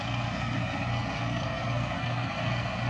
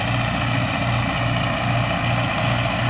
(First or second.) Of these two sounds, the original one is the second